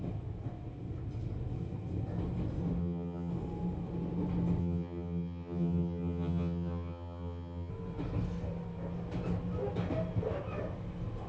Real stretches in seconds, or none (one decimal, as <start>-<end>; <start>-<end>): 0.0-2.8; 3.3-4.6; 7.7-11.3